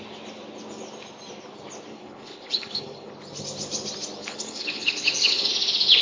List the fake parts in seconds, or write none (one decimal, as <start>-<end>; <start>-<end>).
1.9-3.1; 4.2-5.5